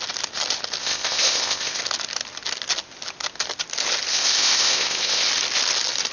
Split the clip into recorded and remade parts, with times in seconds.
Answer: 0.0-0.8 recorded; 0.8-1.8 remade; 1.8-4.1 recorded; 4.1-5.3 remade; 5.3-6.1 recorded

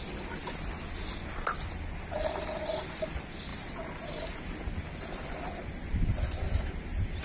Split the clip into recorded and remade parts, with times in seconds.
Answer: 0.0-7.2 recorded